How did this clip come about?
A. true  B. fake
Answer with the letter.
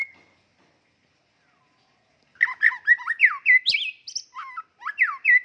A